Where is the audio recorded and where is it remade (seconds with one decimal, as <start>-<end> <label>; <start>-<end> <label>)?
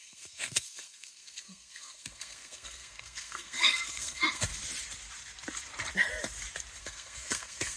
0.0-4.5 remade; 4.5-6.8 recorded; 6.8-7.8 remade